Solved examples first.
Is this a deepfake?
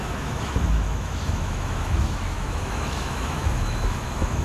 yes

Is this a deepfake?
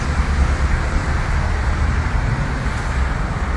no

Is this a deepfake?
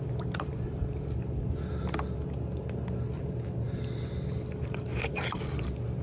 no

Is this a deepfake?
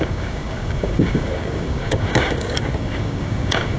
yes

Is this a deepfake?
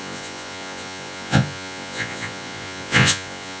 yes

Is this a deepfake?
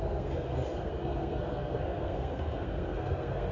yes